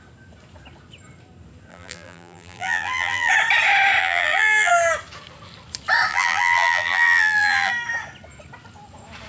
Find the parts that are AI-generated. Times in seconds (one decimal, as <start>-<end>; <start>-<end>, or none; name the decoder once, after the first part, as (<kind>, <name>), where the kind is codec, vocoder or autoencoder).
1.7-3.3 (vocoder, BigVGAN v2); 4.0-4.7; 6.1-7.7